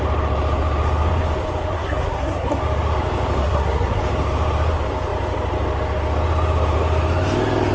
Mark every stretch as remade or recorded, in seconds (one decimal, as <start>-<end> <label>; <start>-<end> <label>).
0.0-1.7 recorded; 1.7-2.6 remade; 2.6-3.4 recorded; 3.4-4.0 remade; 4.0-7.7 recorded